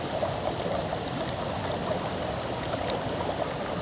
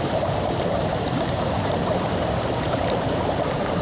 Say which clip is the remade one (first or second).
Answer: second